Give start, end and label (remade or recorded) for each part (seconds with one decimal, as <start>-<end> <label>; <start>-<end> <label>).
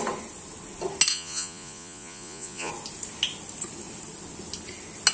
0.0-1.1 recorded; 1.1-2.7 remade; 2.7-5.1 recorded